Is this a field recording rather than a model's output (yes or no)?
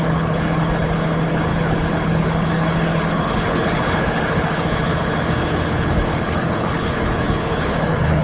no